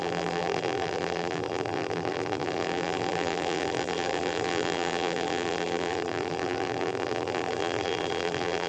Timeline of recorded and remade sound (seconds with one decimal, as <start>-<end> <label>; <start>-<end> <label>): 0.0-8.7 remade